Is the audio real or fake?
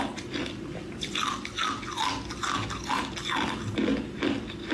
real